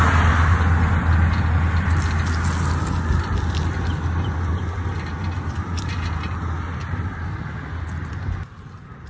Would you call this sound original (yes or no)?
yes